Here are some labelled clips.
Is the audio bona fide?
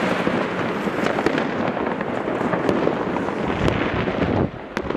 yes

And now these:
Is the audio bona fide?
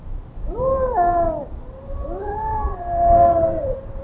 no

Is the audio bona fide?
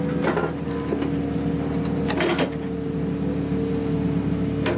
yes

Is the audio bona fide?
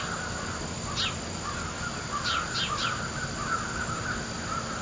yes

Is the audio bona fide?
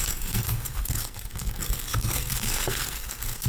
no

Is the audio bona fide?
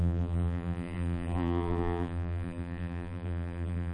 no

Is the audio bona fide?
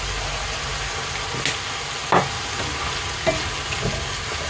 yes